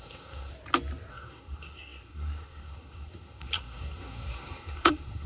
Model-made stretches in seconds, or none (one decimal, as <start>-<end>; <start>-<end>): 0.0-0.5; 1.1-5.3